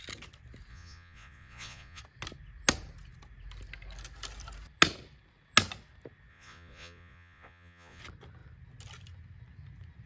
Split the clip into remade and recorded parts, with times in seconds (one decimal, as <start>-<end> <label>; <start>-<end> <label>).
0.0-0.7 recorded; 0.7-2.0 remade; 2.0-6.3 recorded; 6.3-8.0 remade; 8.0-10.1 recorded